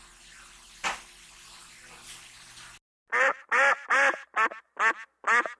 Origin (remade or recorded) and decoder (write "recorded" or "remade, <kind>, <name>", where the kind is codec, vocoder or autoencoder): recorded